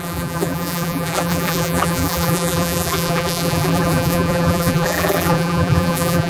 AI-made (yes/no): yes